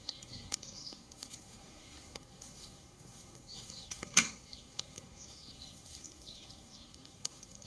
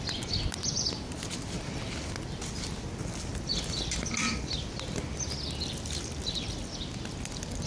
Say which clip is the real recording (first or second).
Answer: second